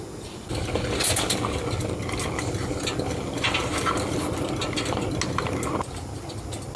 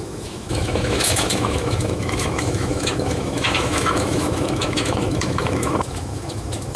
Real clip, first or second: first